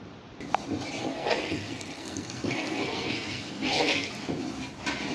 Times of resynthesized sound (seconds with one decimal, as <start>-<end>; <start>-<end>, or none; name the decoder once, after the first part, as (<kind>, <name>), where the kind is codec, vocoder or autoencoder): 1.0-4.1 (codec, SNAC)